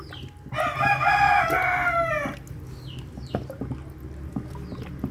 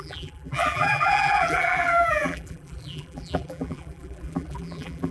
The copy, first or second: second